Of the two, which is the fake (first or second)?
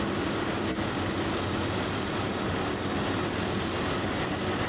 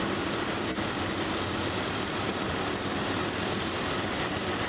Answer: second